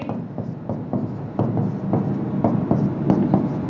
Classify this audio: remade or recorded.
recorded